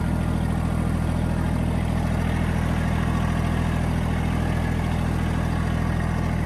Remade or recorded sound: recorded